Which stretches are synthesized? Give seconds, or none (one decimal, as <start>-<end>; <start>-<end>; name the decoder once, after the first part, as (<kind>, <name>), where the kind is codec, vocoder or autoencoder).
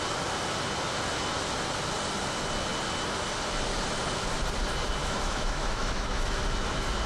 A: 5.0-6.4 (autoencoder, DAC-VAE)